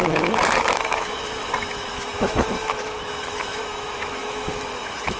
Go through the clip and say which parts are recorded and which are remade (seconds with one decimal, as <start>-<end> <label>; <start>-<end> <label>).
0.0-5.2 remade